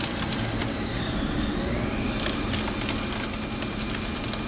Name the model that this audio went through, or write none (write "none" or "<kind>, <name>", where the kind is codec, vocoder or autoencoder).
none